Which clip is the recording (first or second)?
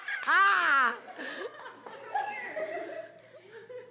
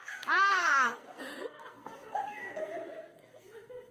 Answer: first